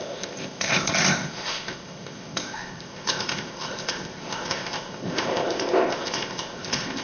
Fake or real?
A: fake